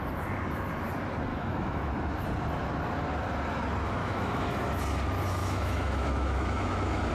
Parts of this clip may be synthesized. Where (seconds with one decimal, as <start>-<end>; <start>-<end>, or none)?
1.3-1.9; 4.0-4.8; 5.4-7.1